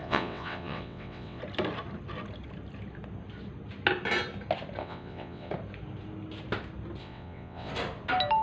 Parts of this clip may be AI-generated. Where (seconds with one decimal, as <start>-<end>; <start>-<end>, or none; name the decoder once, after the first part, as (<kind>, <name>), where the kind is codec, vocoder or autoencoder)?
0.0-1.4 (vocoder, WaveNeXt); 4.8-5.5; 7.0-7.7